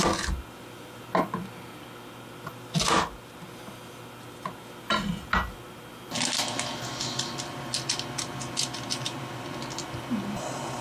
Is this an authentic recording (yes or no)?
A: yes